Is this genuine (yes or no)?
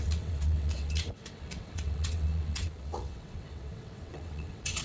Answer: no